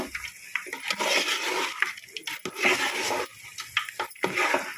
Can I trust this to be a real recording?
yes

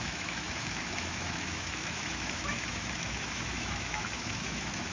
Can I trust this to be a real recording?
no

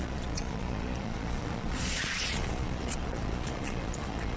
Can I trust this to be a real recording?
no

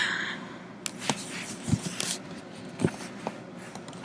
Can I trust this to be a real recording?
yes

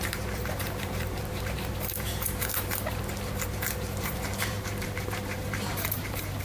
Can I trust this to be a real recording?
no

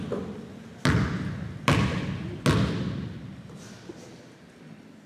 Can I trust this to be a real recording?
yes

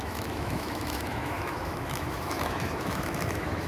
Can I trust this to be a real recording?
no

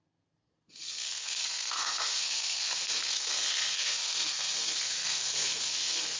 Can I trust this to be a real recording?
no